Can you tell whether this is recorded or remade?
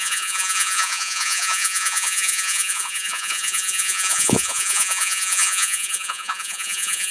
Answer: remade